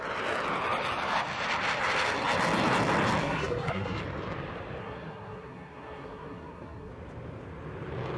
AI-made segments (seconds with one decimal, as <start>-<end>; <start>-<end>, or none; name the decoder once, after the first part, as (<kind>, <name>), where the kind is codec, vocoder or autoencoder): 3.2-4.0 (codec, SNAC); 4.8-6.9